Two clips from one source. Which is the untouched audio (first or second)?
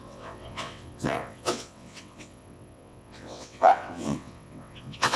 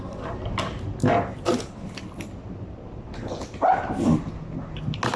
second